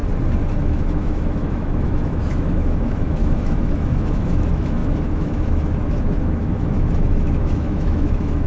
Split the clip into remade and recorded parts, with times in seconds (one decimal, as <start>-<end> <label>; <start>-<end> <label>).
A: 0.0-0.6 recorded; 0.6-8.5 remade